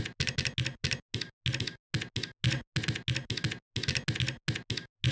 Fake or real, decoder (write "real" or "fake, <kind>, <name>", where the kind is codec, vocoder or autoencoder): real